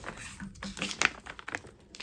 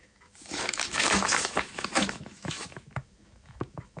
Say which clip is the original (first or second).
first